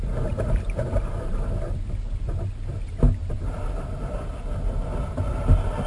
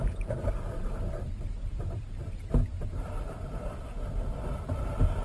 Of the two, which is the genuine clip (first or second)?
first